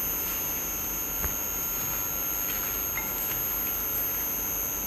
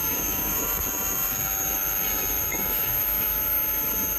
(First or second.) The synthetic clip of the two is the second